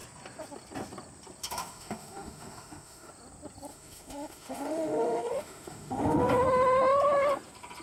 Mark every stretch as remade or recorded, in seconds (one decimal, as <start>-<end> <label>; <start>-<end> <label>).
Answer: 0.0-1.4 recorded; 1.4-3.1 remade; 3.1-3.7 recorded; 3.7-6.3 remade; 6.3-7.8 recorded